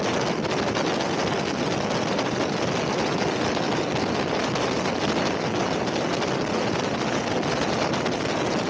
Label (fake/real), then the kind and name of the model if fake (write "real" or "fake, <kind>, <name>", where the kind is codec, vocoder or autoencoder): real